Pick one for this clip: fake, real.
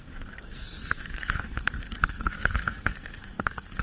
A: fake